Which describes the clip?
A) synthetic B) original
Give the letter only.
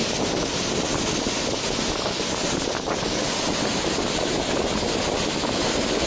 B